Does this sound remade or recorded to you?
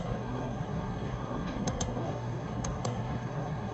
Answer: remade